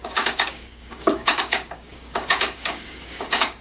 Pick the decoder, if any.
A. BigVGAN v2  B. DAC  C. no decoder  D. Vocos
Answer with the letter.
B